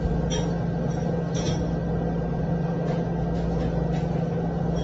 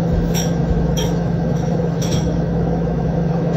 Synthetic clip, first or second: second